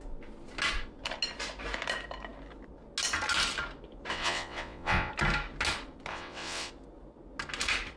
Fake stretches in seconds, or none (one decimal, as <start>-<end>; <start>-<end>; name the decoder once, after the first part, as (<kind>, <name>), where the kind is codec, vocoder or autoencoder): 4.1-5.1 (vocoder, WaveNeXt); 6.1-6.7